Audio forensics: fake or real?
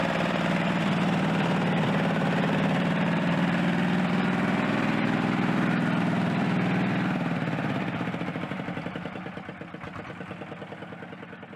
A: fake